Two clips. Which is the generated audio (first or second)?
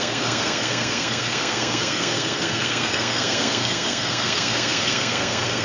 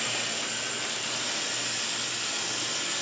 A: first